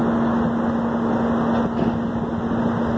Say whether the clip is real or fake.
real